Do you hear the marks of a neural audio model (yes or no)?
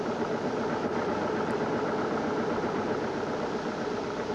no